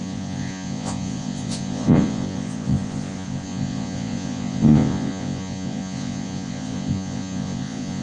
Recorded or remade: remade